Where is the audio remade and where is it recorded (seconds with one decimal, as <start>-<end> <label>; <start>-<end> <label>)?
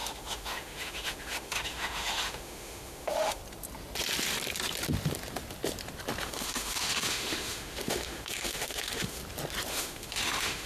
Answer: 0.0-3.4 remade; 3.4-6.2 recorded; 6.2-9.2 remade; 9.2-9.7 recorded; 9.7-10.7 remade